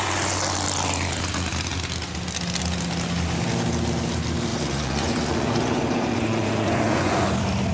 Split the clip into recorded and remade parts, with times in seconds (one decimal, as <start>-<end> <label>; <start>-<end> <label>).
0.0-4.5 recorded; 4.5-7.3 remade; 7.3-7.7 recorded